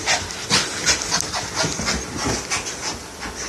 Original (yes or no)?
yes